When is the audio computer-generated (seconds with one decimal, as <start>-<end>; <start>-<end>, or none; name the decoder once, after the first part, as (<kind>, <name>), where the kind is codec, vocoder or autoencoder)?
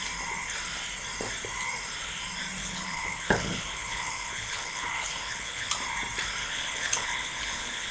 2.6-5.7 (codec, HILCodec); 6.4-7.9